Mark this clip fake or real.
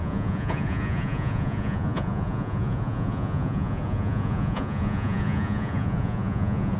fake